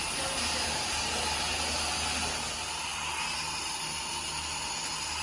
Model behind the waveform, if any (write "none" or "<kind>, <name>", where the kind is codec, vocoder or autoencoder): none